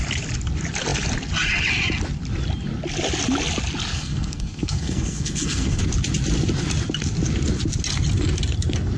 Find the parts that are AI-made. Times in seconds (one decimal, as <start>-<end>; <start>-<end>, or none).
3.9-5.8